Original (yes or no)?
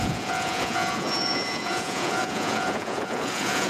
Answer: no